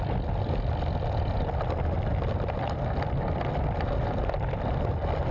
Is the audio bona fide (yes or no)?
yes